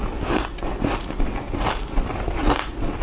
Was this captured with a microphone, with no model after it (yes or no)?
yes